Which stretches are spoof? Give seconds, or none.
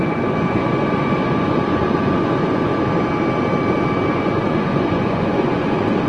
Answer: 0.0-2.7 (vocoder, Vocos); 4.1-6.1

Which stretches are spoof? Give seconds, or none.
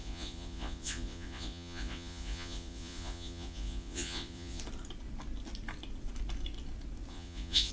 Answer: 0.0-4.6 (vocoder, Vocos); 7.1-7.7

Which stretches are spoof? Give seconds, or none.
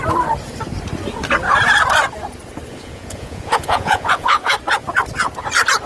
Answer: 2.7-4.5 (vocoder, Vocos)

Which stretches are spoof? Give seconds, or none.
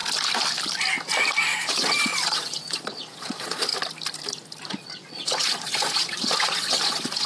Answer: 1.6-3.7 (vocoder, Vocos); 4.7-7.3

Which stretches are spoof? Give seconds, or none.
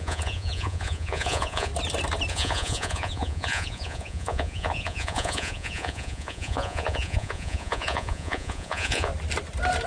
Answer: 0.0-1.7 (vocoder, Vocos); 2.3-9.1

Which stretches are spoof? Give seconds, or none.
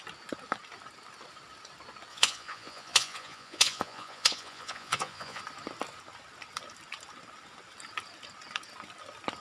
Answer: 2.1-5.4 (vocoder, Vocos)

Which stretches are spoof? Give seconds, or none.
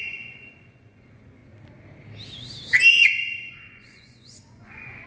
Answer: 0.0-1.4 (vocoder, Vocos); 2.9-5.1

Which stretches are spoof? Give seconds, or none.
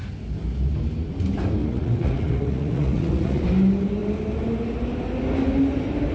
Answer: 1.6-3.4 (vocoder, Vocos)